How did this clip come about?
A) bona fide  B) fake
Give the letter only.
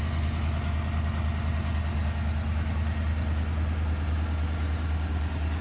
A